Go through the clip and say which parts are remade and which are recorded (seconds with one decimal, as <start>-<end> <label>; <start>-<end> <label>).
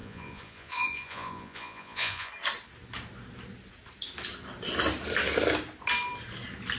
0.0-2.3 remade; 2.3-6.8 recorded